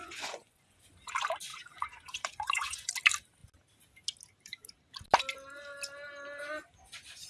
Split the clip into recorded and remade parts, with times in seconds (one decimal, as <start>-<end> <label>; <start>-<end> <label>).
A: 0.0-0.8 remade; 0.8-1.5 recorded; 1.5-2.9 remade; 2.9-7.3 recorded

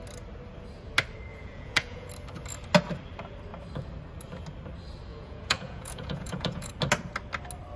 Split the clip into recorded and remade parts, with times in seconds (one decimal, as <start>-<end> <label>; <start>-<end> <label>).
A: 0.0-1.3 recorded; 1.3-2.1 remade; 2.1-5.1 recorded; 5.1-6.7 remade; 6.7-7.8 recorded